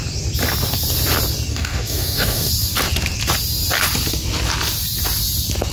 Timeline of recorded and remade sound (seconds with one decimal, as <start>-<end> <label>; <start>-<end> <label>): 0.0-1.5 recorded; 1.5-2.5 remade; 2.5-5.7 recorded